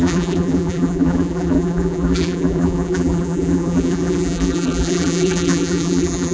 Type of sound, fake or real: fake